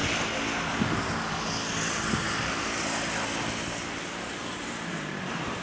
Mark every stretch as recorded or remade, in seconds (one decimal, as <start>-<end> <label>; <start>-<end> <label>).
0.0-5.6 recorded